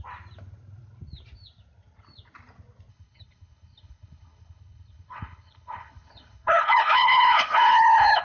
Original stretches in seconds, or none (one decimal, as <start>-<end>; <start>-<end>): 0.0-2.9